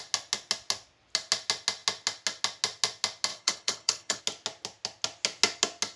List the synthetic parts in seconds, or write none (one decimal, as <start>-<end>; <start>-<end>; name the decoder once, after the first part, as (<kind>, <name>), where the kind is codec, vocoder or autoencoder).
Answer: 3.3-4.2 (codec, HILCodec)